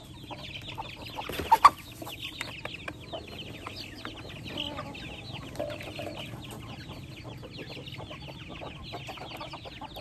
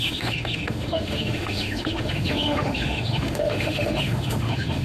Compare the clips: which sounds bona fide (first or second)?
first